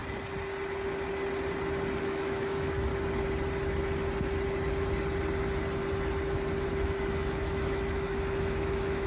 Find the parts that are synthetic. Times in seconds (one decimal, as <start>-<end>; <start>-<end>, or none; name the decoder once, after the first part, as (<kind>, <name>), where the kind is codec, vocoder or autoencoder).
2.0-2.9 (autoencoder, DAC-VAE); 6.7-9.1